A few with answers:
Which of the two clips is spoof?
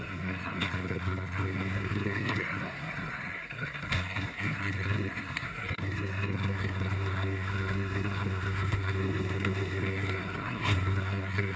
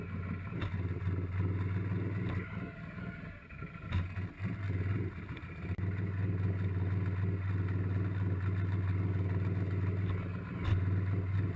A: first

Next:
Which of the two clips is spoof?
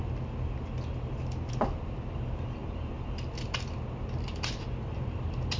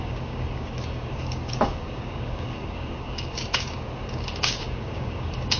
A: second